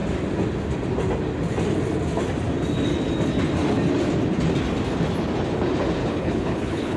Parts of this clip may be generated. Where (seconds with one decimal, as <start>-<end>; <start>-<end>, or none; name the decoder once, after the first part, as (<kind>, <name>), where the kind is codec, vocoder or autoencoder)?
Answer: 6.0-7.0 (codec, HILCodec)